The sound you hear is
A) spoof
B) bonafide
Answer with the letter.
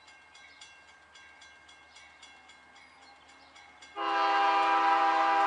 B